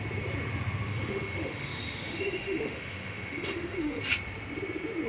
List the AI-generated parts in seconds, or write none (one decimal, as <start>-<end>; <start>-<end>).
0.9-4.0